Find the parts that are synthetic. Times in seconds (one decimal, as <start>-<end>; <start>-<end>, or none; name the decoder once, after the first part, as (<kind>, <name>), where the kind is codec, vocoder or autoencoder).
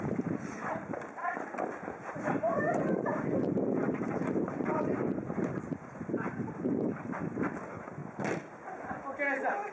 0.0-1.2 (vocoder, BigVGAN v2); 2.1-3.1; 3.8-8.0